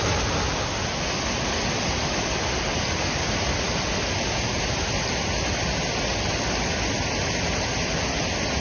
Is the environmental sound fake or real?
real